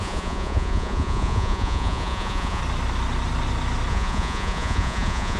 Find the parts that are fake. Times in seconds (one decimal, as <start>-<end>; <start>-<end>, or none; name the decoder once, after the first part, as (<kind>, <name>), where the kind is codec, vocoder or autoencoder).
0.0-2.6 (vocoder, Vocos); 3.9-5.4